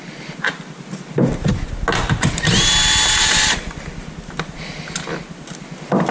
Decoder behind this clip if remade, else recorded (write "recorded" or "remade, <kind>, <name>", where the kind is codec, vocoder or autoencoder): recorded